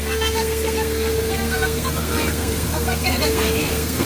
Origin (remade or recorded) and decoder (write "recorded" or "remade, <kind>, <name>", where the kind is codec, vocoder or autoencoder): remade, codec, SNAC